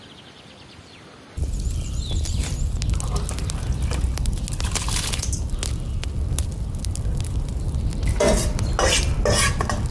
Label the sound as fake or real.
real